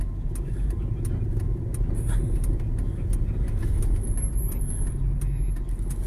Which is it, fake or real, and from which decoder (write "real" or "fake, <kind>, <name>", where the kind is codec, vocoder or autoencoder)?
real